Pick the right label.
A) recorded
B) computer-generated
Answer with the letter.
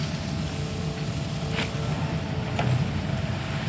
A